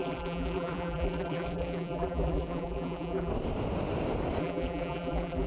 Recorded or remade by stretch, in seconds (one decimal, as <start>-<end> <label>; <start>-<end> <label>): 0.0-3.3 remade; 3.3-4.4 recorded; 4.4-5.5 remade